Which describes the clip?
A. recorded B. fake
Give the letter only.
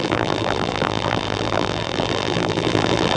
B